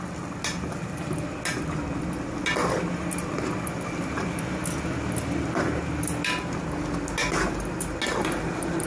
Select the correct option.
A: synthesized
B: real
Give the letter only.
B